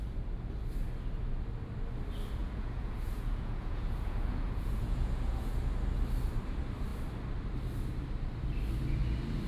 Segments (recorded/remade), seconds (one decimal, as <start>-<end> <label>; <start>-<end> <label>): 0.0-2.4 recorded; 2.4-5.6 remade; 5.6-9.5 recorded